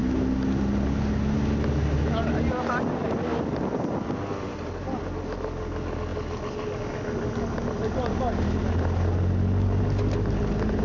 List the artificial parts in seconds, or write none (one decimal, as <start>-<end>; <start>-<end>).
none